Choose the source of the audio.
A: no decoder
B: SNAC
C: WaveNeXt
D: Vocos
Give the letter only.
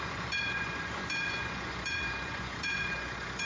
D